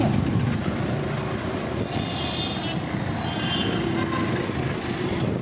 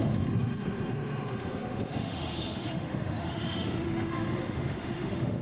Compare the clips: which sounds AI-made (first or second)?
second